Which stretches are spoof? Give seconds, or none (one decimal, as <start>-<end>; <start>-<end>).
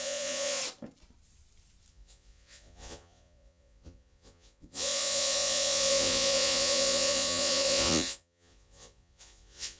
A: 0.0-0.6; 1.9-9.8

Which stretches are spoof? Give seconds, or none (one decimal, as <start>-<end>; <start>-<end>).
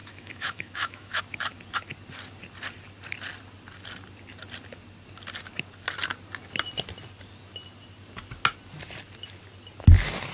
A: 0.0-1.2